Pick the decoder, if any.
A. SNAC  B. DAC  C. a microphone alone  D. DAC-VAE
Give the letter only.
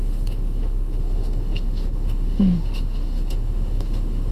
D